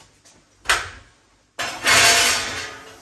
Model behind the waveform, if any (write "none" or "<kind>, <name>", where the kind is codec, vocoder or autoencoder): none